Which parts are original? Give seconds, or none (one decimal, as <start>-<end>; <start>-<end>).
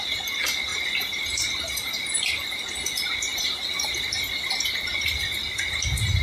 0.0-6.2